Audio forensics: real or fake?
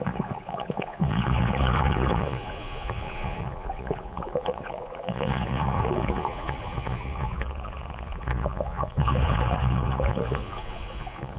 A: fake